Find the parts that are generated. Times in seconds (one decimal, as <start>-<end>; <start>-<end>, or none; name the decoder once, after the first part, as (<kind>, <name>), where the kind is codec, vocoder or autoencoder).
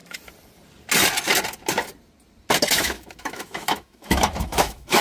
2.7-5.0 (autoencoder, DAC-VAE)